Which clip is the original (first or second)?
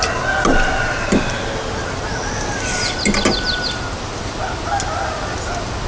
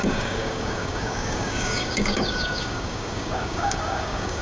first